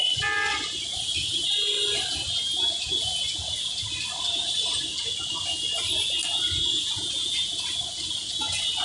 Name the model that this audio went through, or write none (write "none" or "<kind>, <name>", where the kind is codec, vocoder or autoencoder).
none